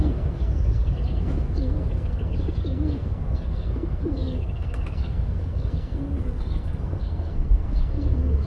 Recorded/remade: remade